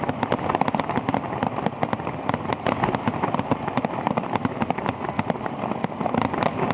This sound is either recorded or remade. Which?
recorded